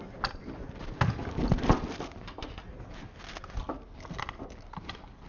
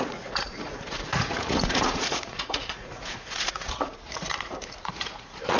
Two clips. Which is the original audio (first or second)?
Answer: first